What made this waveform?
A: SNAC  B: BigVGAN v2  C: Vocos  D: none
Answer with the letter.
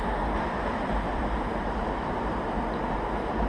B